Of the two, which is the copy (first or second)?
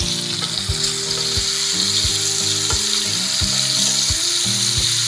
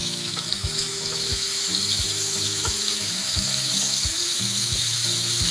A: second